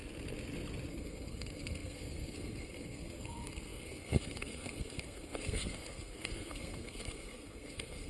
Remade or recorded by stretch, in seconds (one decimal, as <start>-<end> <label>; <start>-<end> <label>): 0.0-0.9 recorded; 0.9-8.1 remade